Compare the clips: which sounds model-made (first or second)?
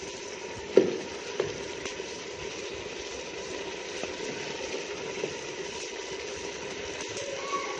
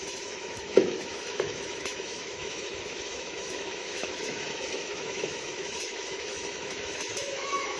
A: second